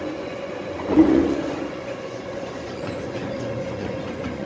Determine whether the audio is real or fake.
fake